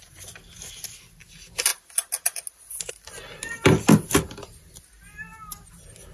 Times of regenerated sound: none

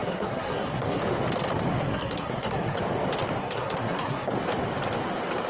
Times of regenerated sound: 0.0-1.0 (codec, SNAC); 1.7-2.8; 3.4-4.3

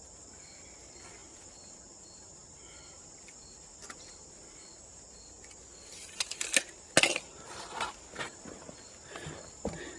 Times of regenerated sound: none

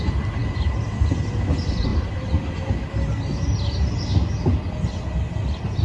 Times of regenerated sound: none

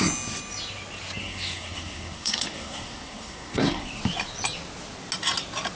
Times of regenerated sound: 1.2-4.0 (codec, SNAC)

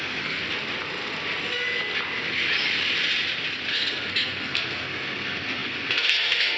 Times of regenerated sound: 0.0-0.4 (codec, SNAC); 3.7-6.6